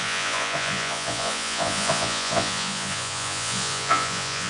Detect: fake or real fake